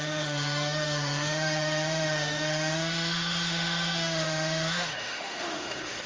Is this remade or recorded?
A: remade